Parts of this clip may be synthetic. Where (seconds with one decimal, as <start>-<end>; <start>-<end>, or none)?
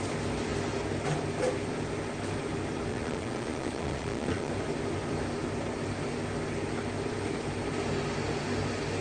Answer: 2.9-4.5